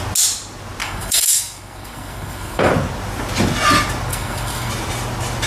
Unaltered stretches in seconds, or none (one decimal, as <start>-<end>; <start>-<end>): 0.0-0.8; 2.7-4.1; 4.7-5.5